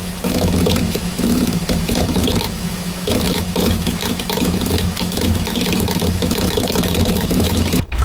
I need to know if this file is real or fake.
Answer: fake